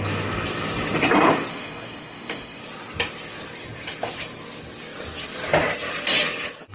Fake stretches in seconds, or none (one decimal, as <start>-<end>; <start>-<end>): 1.5-2.6